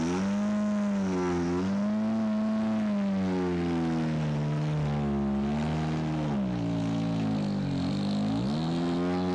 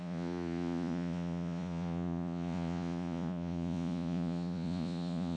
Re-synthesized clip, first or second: second